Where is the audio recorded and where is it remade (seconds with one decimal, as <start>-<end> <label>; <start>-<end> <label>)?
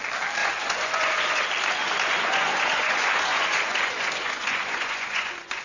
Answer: 0.0-0.4 recorded; 0.4-1.4 remade; 1.4-1.8 recorded; 1.8-5.6 remade